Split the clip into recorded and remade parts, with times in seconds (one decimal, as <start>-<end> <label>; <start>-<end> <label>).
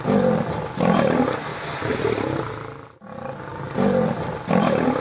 0.0-1.5 remade; 1.5-4.5 recorded; 4.5-5.0 remade